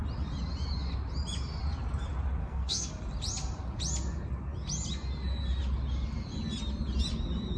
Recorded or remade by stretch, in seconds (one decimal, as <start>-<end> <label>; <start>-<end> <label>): 0.0-2.4 recorded; 2.4-2.9 remade; 2.9-7.6 recorded